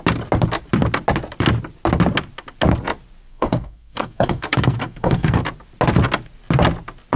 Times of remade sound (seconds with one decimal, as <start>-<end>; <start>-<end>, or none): 3.3-5.4